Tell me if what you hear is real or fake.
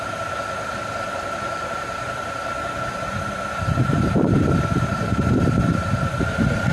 fake